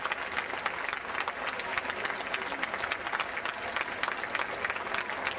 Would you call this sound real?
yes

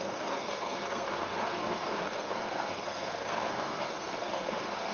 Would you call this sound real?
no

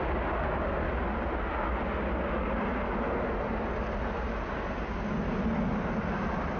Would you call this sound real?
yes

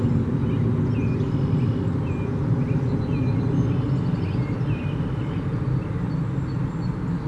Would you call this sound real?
yes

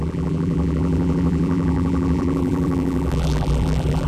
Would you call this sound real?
no